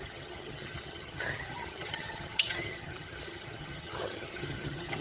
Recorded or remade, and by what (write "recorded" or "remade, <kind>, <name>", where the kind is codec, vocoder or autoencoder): remade, vocoder, HiFi-GAN